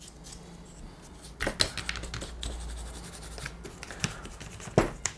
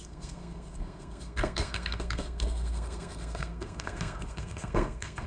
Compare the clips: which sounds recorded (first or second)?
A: first